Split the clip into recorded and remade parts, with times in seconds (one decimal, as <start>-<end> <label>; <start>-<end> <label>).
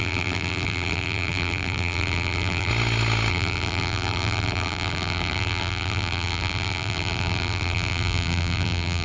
0.0-2.7 remade; 2.7-3.3 recorded; 3.3-9.0 remade